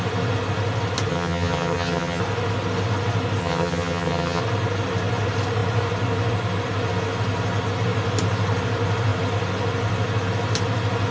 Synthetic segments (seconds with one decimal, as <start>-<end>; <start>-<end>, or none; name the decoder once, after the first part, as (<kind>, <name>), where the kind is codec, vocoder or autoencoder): 1.1-2.2 (vocoder, HiFi-GAN); 3.4-4.4